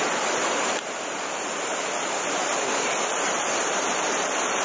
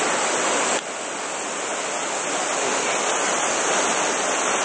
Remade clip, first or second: first